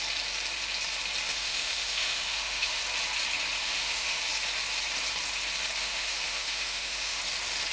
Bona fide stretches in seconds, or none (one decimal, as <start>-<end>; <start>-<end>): 0.0-1.3; 2.8-3.6; 4.2-5.8; 7.2-7.7